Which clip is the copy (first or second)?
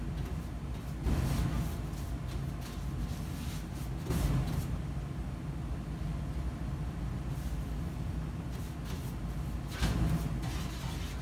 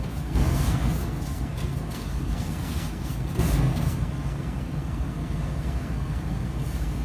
second